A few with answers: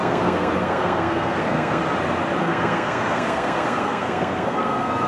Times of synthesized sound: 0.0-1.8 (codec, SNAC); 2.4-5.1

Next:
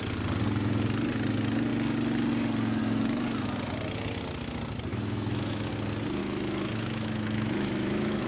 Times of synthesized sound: 4.9-5.7 (autoencoder, DAC-VAE); 6.2-8.3

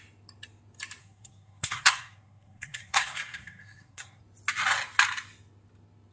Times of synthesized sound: 1.0-4.2 (codec, SNAC)